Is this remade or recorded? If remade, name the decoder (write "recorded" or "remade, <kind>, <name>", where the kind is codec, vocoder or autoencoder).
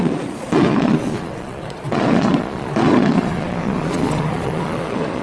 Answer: remade, vocoder, Vocos